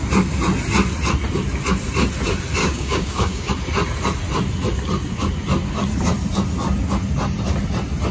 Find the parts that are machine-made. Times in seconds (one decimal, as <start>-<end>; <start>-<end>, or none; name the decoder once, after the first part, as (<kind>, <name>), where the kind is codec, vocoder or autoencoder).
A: 2.6-3.5 (codec, DAC)